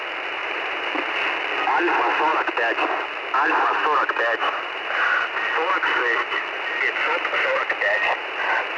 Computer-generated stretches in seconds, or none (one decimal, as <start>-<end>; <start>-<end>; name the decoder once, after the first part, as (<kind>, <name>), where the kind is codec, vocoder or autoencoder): 0.4-0.9 (vocoder, BigVGAN v2); 4.4-5.3